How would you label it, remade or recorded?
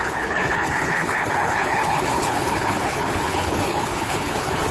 remade